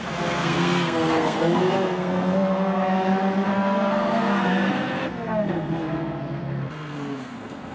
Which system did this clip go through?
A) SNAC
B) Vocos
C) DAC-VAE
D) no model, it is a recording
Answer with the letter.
A